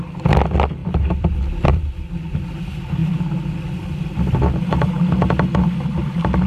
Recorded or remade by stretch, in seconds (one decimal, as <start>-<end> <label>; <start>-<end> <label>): 0.0-0.8 recorded; 0.8-1.9 remade; 1.9-6.5 recorded